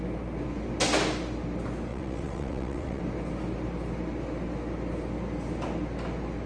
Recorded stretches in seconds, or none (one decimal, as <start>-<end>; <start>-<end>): 0.0-1.9; 3.0-6.5